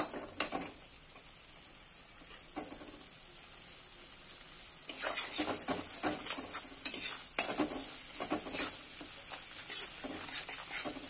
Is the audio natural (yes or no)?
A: yes